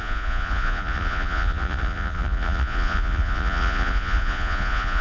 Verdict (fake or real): fake